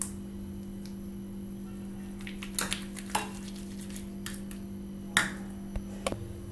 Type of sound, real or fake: real